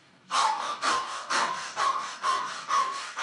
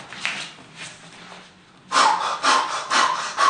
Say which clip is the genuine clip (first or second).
second